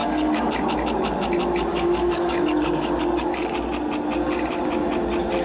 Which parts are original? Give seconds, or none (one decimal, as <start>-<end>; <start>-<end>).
0.5-1.7; 3.5-5.4